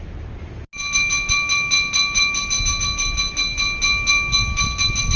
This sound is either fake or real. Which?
real